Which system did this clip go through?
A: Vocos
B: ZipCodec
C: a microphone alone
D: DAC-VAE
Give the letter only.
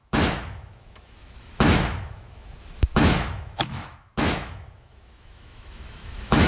D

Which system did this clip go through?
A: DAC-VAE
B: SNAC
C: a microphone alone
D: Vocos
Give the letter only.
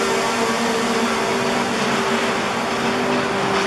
C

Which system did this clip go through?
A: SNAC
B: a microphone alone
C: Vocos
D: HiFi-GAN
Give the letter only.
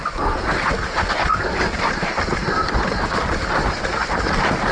B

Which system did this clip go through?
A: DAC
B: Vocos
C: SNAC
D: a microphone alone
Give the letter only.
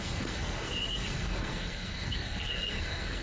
C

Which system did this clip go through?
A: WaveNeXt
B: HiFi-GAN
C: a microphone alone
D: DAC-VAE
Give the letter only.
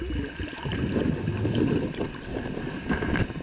C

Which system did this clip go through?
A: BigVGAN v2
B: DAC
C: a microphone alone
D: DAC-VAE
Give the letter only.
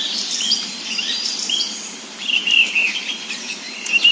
A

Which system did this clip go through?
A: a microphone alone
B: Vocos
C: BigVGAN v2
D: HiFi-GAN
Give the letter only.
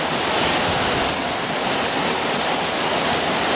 A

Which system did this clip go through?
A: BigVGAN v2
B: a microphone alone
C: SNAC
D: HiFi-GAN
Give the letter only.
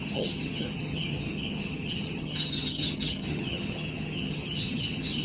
D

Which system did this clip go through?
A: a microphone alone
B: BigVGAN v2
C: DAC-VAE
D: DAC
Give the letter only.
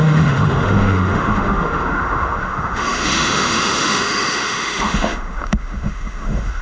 C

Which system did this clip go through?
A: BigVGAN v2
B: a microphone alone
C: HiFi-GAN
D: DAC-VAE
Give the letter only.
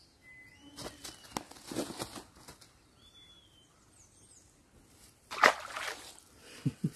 B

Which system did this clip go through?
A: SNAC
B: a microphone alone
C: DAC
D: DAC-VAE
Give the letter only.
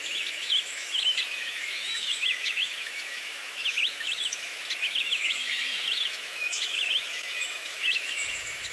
D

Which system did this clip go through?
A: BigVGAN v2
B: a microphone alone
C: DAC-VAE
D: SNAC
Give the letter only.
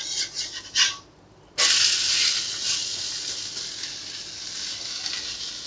B